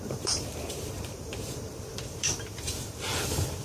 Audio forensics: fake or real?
fake